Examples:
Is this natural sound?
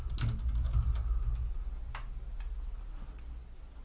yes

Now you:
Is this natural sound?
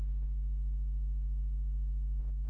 yes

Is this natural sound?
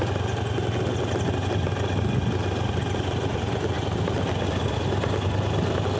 yes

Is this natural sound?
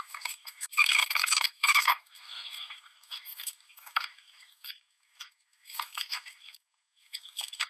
no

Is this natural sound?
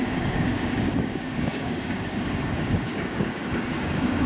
no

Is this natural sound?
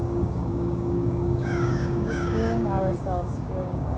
no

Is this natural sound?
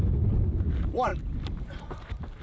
yes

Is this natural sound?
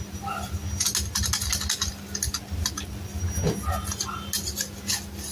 yes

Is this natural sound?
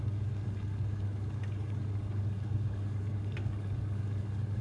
no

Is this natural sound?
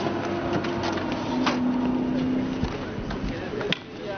yes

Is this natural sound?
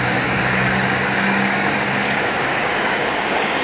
no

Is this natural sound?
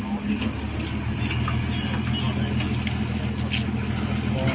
yes